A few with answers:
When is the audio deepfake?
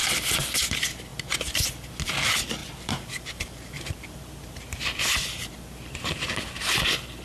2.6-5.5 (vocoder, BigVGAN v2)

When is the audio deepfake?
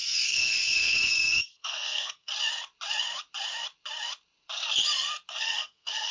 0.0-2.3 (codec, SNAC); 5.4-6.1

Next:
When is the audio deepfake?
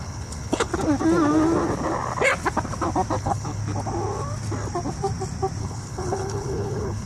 0.0-0.7 (codec, HILCodec); 3.2-3.6; 5.6-7.1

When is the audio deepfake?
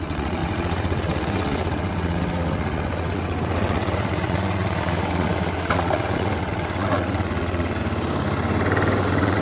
0.0-7.8 (vocoder, WaveNeXt); 9.0-9.4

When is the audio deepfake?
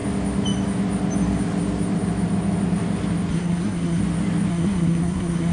3.3-4.0 (codec, SNAC); 4.5-5.5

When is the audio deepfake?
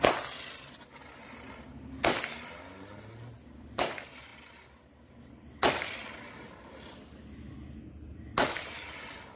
none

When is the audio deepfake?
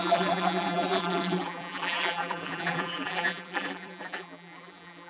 0.0-5.1 (vocoder, BigVGAN v2)